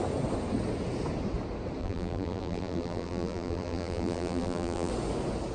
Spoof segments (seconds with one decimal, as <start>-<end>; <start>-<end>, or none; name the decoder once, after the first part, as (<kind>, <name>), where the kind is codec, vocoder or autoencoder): 1.8-4.9 (vocoder, BigVGAN v2)